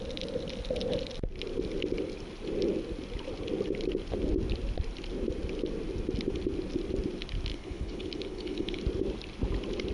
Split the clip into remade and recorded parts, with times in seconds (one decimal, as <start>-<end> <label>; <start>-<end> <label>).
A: 0.0-7.5 recorded; 7.5-8.8 remade; 8.8-9.9 recorded